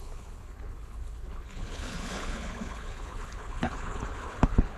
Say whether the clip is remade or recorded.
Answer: remade